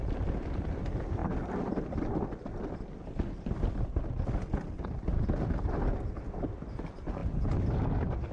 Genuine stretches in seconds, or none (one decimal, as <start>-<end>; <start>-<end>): 0.0-8.3